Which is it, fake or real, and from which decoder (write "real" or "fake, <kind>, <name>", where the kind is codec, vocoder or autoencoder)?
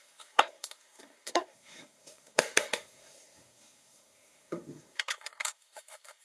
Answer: fake, codec, SNAC